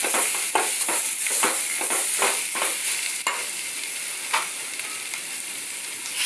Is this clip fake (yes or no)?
yes